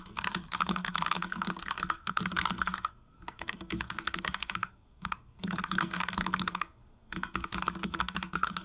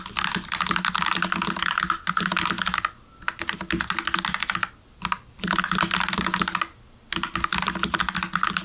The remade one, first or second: first